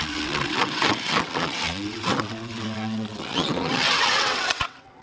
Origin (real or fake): fake